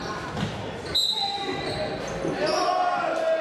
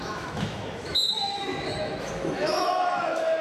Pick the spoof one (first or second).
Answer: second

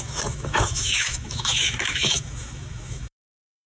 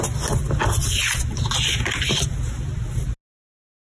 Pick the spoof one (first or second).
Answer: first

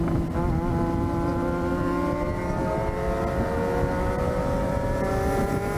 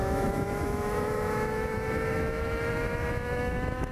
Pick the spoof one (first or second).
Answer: second